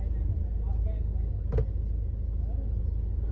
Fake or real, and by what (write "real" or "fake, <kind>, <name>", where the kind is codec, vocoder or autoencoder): real